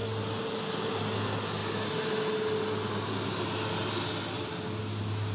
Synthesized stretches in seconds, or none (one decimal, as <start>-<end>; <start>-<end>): none